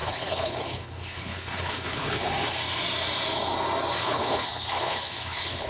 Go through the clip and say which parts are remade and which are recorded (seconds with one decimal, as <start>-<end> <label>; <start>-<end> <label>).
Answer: 0.0-2.3 remade; 2.3-4.0 recorded; 4.0-5.7 remade